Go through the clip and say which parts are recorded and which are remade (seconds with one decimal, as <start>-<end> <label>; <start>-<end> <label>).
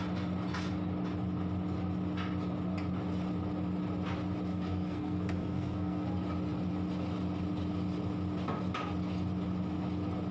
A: 0.0-4.5 recorded; 4.5-6.1 remade; 6.1-10.3 recorded